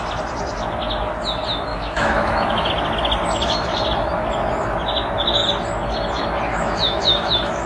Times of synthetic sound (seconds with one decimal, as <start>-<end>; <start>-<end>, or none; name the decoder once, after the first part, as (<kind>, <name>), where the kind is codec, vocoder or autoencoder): 1.7-2.7 (autoencoder, DAC-VAE); 6.5-7.7